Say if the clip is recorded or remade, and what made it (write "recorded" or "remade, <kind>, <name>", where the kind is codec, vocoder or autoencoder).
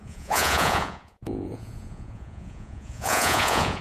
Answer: remade, vocoder, Vocos